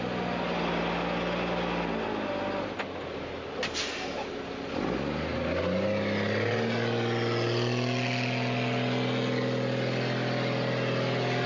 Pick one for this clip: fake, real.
real